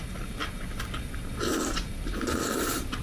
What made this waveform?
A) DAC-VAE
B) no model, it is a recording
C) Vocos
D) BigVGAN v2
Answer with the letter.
B